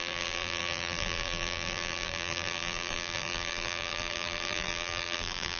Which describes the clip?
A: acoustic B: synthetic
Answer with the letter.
B